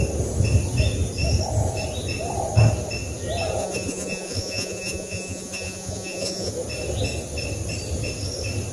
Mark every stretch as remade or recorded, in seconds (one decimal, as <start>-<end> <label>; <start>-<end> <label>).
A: 0.0-3.6 recorded; 3.6-6.5 remade; 6.5-8.7 recorded